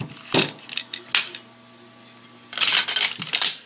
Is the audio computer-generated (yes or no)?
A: no